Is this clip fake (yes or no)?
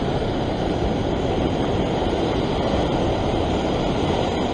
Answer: yes